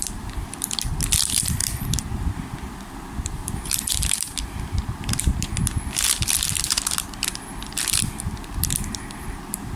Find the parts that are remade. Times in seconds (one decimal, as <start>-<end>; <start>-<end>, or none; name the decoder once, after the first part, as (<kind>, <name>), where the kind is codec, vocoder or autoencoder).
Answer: 0.0-9.8 (vocoder, BigVGAN v2)